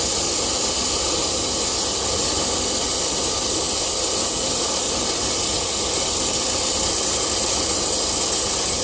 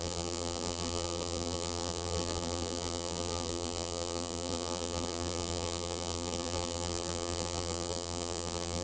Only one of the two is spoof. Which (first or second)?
second